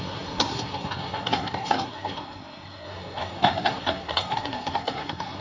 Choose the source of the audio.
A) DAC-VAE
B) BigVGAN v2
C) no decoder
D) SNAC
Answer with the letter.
D